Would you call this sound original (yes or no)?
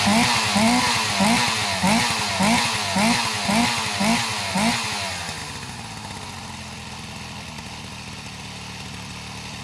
yes